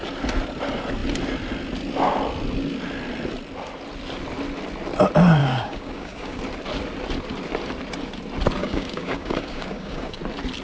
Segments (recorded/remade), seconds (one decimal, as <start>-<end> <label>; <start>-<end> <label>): 0.0-5.4 recorded; 5.4-6.4 remade; 6.4-8.6 recorded; 8.6-10.2 remade; 10.2-10.6 recorded